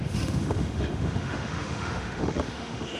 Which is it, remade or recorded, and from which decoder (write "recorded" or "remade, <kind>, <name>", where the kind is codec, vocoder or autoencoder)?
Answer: remade, autoencoder, DAC-VAE